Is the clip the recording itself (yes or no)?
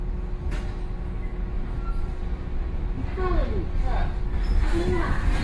yes